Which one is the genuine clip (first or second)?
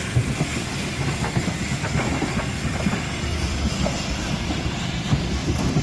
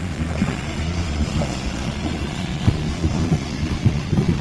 first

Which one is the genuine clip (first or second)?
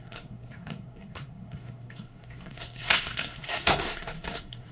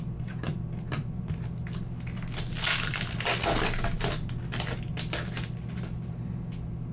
second